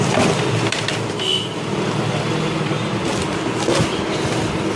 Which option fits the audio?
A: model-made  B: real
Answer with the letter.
B